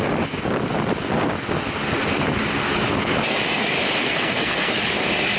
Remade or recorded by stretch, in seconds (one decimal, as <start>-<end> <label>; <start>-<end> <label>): 0.0-4.0 recorded; 4.0-4.8 remade; 4.8-5.4 recorded